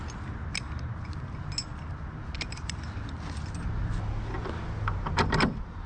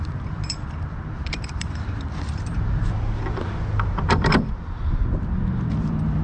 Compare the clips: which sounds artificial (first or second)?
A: second